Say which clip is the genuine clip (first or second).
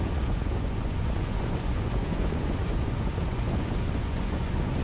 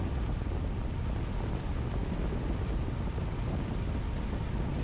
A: second